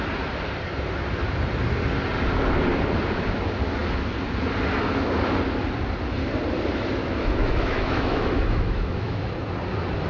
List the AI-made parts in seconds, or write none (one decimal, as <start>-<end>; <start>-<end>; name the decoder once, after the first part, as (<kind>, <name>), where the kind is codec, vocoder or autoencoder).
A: 7.0-9.3 (autoencoder, DAC-VAE)